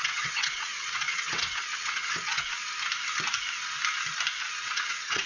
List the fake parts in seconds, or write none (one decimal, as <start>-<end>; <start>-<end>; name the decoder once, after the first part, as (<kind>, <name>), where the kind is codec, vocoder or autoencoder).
0.0-2.6 (vocoder, WaveNeXt); 4.4-5.3